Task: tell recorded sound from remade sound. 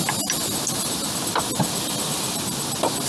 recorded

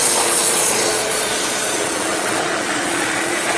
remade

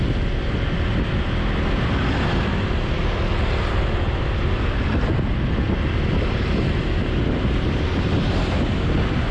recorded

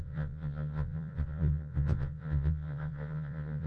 remade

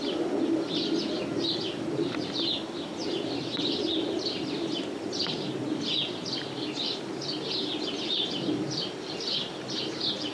recorded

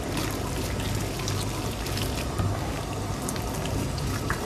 recorded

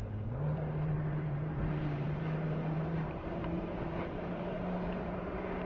remade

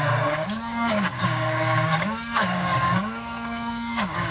remade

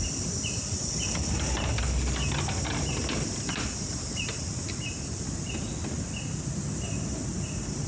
recorded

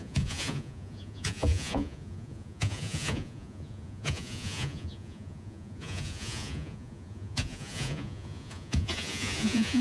remade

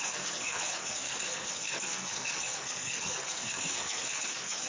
remade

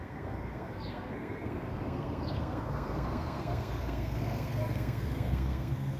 remade